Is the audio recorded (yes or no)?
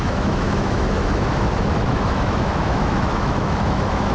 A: no